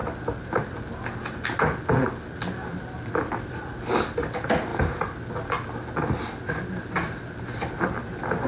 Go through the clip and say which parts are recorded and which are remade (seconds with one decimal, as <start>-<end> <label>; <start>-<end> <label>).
0.0-0.8 remade; 0.8-2.7 recorded; 2.7-3.7 remade; 3.7-8.5 recorded